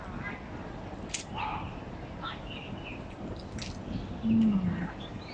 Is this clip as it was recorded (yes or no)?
yes